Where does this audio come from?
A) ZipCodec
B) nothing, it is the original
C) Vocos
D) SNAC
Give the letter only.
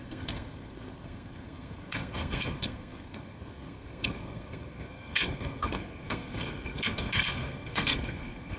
D